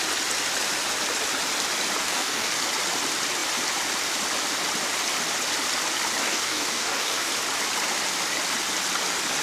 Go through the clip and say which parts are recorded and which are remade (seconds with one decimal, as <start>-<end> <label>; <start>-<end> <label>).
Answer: 0.0-2.0 recorded; 2.0-2.5 remade; 2.5-6.2 recorded; 6.2-7.3 remade; 7.3-9.4 recorded